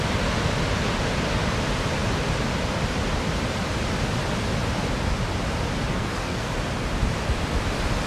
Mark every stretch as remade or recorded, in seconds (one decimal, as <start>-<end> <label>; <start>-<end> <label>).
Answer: 0.0-5.9 recorded; 5.9-6.5 remade; 6.5-8.1 recorded